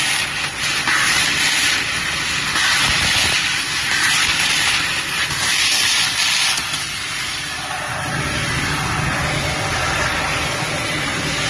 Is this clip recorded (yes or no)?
yes